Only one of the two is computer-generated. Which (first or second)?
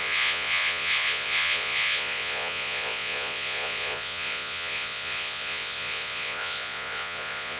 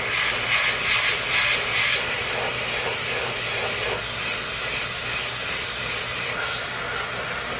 first